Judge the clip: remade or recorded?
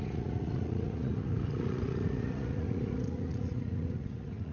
remade